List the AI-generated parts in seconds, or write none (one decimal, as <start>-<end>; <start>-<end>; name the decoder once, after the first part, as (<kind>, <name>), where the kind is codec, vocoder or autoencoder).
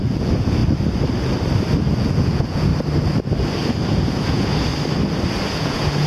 0.0-0.6 (vocoder, Vocos); 1.8-2.7; 3.9-4.7; 5.4-6.1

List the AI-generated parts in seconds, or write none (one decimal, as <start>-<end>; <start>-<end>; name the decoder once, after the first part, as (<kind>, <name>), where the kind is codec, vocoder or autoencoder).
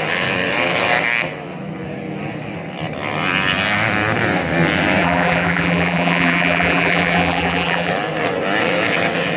5.0-7.9 (vocoder, BigVGAN v2)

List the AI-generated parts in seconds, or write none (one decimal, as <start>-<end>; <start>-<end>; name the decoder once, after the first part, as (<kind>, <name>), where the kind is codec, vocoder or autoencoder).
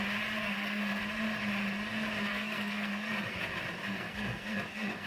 0.4-1.0 (codec, SNAC); 2.3-3.4; 3.8-5.1